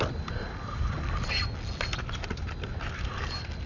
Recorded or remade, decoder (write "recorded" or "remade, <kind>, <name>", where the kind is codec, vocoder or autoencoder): recorded